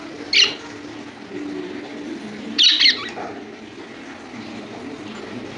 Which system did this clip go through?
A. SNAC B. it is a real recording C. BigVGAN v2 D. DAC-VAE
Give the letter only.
B